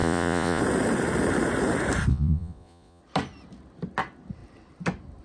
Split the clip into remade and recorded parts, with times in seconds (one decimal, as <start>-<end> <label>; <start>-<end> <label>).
0.0-0.6 remade; 0.6-2.1 recorded; 2.1-3.0 remade; 3.0-5.2 recorded